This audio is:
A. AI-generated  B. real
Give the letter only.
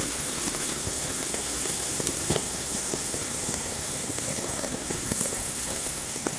A